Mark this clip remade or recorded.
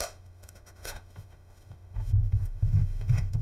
remade